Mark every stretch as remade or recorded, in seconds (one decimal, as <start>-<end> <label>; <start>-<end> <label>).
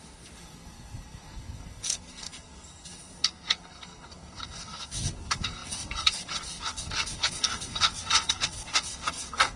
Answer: 0.0-9.6 remade